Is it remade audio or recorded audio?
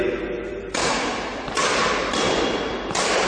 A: recorded